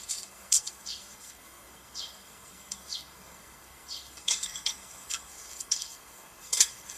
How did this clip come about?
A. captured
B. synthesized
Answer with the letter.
B